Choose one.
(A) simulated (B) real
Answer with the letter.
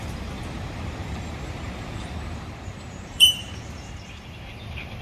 A